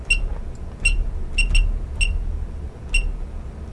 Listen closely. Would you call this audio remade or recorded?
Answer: recorded